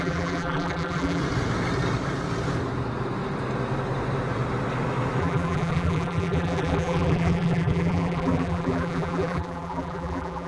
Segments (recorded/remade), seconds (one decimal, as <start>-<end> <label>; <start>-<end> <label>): 0.0-1.2 remade; 1.2-5.2 recorded; 5.2-10.5 remade